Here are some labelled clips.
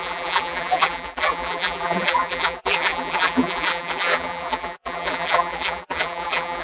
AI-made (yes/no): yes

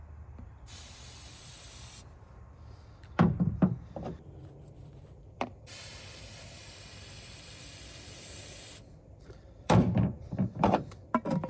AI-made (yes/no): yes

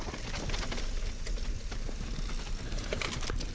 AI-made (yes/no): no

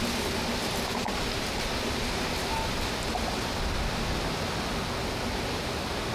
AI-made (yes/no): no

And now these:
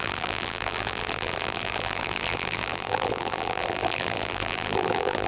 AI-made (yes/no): yes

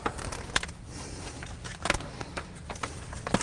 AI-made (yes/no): no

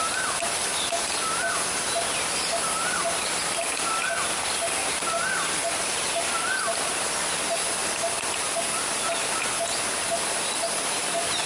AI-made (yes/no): no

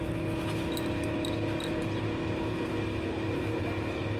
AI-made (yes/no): no